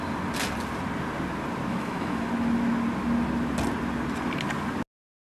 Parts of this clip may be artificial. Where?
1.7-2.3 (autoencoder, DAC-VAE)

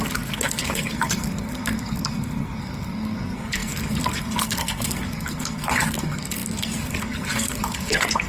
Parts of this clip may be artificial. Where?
0.0-8.3 (codec, SNAC)